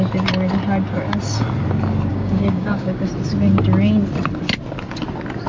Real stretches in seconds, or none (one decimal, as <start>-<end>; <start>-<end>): 0.0-2.1; 3.1-5.5